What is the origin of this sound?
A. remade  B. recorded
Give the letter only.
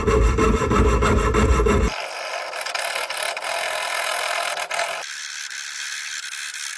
B